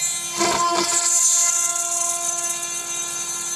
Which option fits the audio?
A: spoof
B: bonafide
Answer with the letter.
B